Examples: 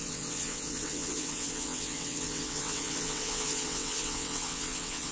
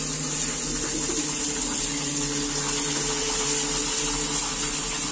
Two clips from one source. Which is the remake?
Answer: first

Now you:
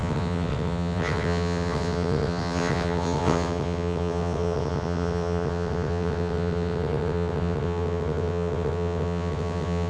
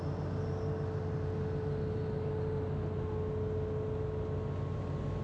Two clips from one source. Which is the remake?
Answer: first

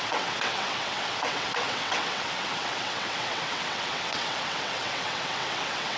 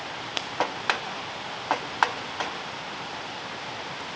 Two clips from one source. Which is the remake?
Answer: first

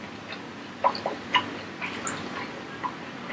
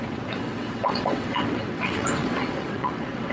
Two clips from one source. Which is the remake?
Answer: second